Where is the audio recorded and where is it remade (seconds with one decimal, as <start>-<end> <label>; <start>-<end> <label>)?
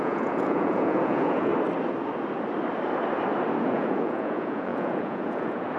0.0-1.5 remade; 1.5-3.6 recorded; 3.6-5.8 remade